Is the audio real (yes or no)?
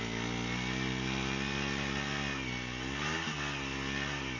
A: yes